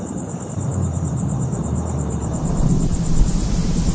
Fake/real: fake